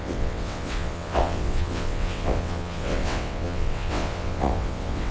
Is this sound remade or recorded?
remade